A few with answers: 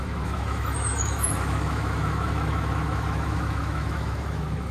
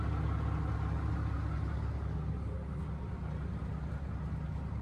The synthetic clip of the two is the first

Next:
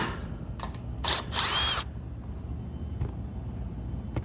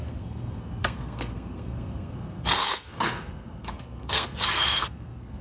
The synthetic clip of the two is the second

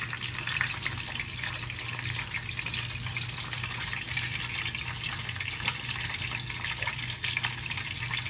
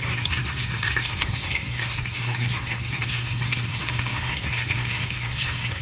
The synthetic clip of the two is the second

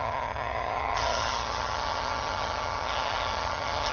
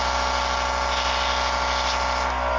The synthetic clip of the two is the first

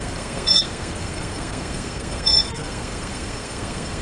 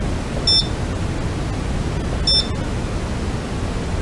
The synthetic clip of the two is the first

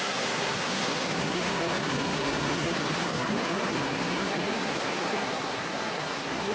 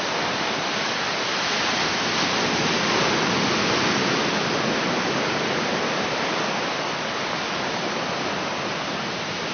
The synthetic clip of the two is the first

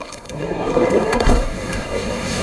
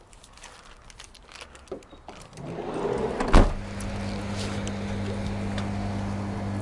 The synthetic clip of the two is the first